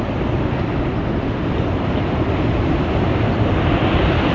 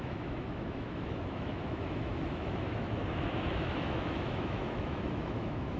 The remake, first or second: second